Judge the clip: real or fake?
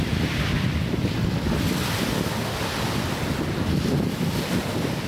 real